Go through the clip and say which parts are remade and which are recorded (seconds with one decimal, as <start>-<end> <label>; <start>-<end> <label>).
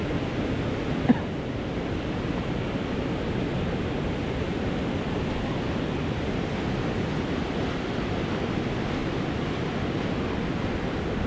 0.0-11.3 recorded